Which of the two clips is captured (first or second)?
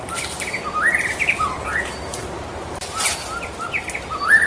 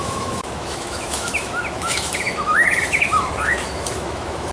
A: first